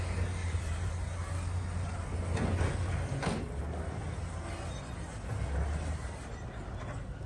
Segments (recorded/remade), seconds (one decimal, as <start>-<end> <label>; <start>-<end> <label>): 0.0-0.4 recorded; 0.4-0.9 remade; 0.9-7.3 recorded